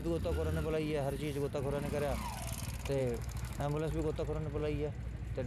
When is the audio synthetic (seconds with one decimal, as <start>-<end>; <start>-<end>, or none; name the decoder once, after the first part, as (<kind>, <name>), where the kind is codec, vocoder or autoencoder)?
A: 3.0-3.9 (autoencoder, DAC-VAE)